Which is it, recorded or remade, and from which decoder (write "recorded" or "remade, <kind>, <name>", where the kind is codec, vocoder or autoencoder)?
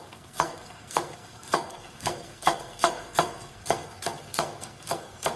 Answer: remade, codec, SNAC